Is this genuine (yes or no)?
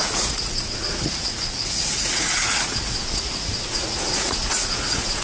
no